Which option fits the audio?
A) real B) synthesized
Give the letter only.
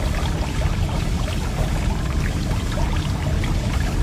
A